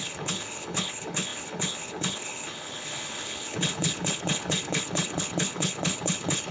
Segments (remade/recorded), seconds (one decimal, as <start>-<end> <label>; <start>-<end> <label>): 0.0-6.5 remade